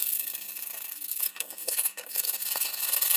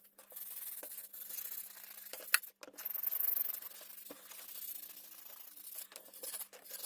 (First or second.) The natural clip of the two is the second